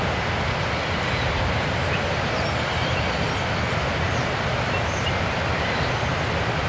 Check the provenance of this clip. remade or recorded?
recorded